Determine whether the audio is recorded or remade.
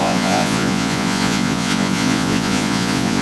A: remade